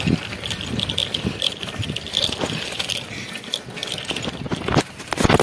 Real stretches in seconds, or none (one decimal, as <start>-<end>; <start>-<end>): 0.0-5.4